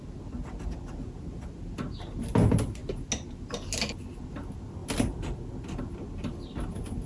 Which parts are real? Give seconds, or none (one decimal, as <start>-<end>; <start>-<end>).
0.0-7.1